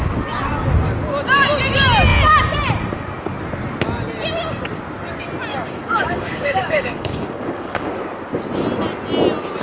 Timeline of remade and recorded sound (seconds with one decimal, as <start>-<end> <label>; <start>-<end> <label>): 0.0-5.5 recorded; 5.5-7.9 remade; 7.9-9.6 recorded